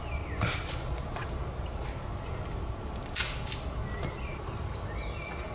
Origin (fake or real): real